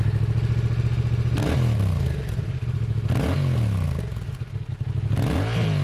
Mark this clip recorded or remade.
recorded